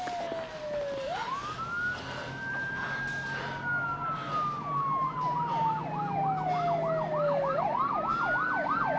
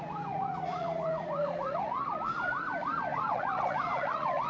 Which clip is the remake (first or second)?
second